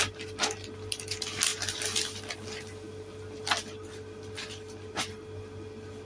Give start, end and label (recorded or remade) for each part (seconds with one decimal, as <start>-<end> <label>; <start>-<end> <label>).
0.0-6.0 recorded